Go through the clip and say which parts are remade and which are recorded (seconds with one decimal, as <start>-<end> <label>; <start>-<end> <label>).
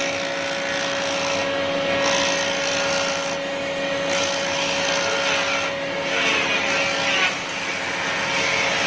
0.0-8.9 recorded